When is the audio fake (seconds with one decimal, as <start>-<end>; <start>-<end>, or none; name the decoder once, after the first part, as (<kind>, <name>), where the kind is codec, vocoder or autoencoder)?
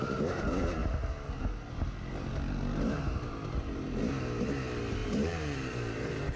5.0-6.4 (vocoder, BigVGAN v2)